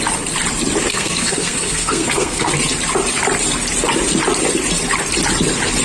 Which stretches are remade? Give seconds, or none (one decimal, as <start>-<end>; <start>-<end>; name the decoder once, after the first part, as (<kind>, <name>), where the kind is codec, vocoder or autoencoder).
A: 0.9-2.5 (codec, SNAC)